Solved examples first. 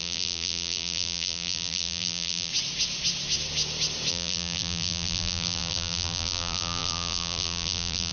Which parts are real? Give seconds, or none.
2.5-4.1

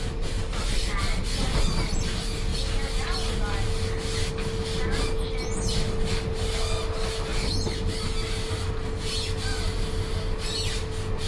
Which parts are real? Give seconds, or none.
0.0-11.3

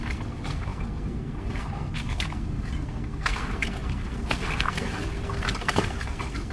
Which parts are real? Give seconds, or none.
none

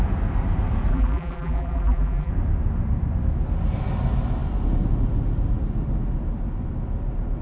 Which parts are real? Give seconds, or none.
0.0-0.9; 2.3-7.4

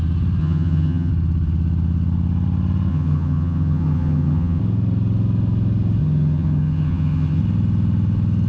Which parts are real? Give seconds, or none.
0.0-0.4; 1.1-2.9; 4.6-6.0; 7.4-8.5